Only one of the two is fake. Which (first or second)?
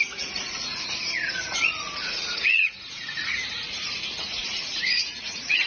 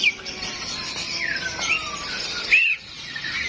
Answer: first